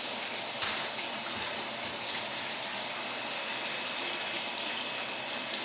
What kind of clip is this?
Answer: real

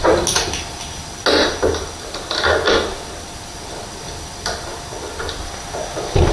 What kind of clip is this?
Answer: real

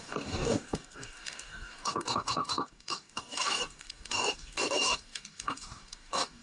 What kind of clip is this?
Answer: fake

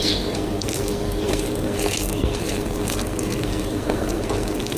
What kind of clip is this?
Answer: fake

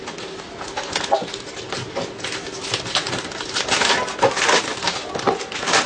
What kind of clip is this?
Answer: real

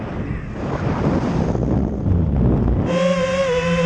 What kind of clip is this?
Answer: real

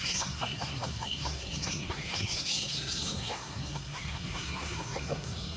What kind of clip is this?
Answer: fake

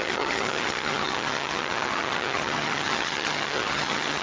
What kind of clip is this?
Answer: fake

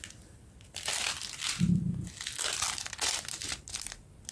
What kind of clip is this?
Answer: real